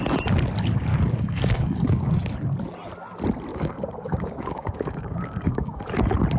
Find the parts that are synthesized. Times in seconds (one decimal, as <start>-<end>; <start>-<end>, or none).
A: 0.9-2.1; 3.5-5.8